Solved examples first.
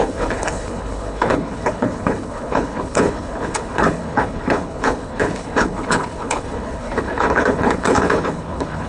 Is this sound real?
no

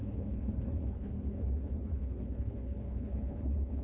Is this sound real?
no